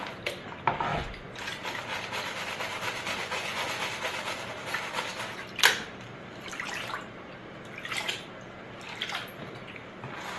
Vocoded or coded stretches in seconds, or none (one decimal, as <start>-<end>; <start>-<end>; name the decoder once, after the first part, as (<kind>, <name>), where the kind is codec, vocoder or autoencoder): 0.9-1.4 (vocoder, Vocos); 3.2-3.8